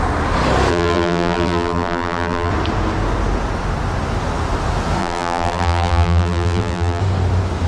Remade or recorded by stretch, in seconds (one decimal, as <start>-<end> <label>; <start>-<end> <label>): 0.0-0.7 recorded; 0.7-2.5 remade; 2.5-5.0 recorded; 5.0-7.0 remade; 7.0-7.7 recorded